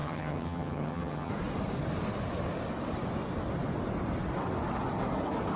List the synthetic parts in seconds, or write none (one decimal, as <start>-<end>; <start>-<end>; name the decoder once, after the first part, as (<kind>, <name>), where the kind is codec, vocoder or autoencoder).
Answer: 0.0-1.3 (vocoder, HiFi-GAN)